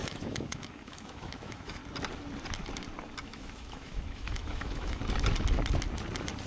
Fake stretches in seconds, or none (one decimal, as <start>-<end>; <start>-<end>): 0.0-1.8; 3.2-5.0